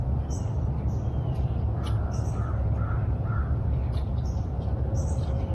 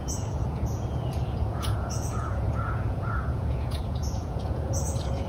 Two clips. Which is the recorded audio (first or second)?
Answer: first